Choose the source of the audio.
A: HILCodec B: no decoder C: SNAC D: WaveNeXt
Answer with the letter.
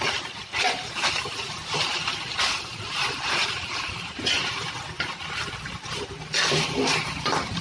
B